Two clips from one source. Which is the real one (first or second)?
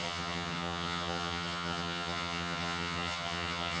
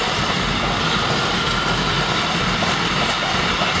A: second